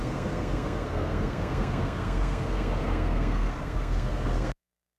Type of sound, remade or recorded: remade